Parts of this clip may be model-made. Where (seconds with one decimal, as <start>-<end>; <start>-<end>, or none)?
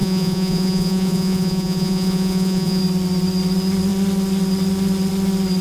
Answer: 0.0-2.8